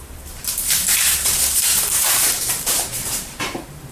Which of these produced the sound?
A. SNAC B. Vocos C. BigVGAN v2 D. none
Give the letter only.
C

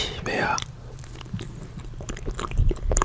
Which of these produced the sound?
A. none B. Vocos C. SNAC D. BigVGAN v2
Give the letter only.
D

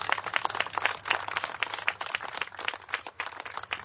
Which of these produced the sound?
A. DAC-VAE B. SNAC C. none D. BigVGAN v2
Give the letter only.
C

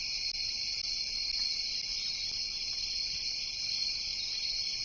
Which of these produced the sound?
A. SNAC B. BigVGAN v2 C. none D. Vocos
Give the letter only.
C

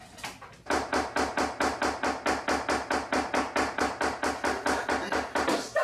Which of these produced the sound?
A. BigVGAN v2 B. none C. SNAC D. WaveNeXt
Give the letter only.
B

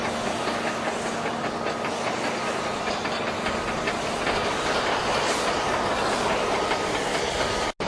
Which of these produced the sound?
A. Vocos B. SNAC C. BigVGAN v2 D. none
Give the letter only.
D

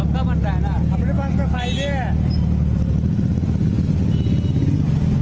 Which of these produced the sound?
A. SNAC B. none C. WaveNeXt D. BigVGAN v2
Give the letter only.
B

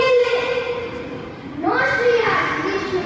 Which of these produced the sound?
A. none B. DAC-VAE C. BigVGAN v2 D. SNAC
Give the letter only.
C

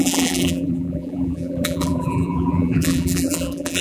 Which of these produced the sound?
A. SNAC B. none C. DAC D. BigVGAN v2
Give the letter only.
D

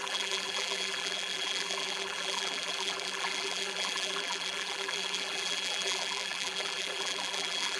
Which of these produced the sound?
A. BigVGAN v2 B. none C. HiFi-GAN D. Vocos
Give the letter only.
A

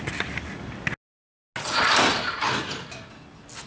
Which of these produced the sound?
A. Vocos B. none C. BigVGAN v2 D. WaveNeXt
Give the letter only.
B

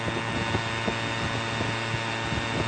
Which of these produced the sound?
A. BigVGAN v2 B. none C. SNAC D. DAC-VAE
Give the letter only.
B